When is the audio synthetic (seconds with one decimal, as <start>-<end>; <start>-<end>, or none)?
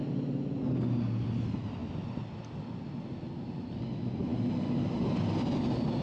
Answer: none